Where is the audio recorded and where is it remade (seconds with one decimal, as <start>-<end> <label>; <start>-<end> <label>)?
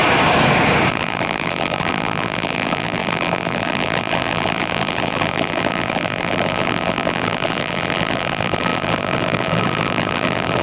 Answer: 0.0-0.9 recorded; 0.9-10.6 remade